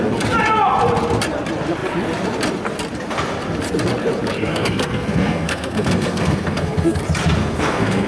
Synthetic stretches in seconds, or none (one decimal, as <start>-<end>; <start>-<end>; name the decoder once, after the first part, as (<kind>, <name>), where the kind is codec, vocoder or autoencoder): 4.5-7.0 (codec, SNAC); 7.4-8.1